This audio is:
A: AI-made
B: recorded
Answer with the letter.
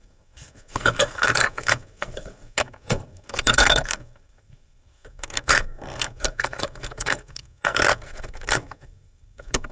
A